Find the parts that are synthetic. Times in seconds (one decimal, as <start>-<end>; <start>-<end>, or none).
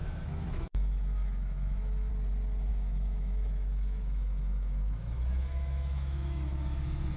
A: 0.0-2.1; 2.7-7.2